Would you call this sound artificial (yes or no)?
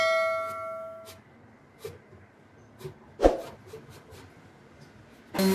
no